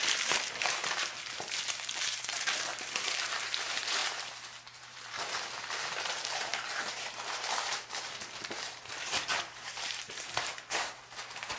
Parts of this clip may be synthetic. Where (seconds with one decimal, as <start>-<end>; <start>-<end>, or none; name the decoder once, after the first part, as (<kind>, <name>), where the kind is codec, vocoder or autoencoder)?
0.0-11.6 (vocoder, BigVGAN v2)